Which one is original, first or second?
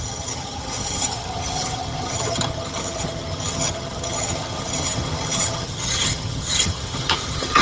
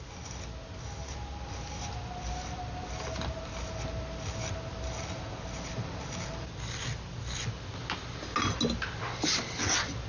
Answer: second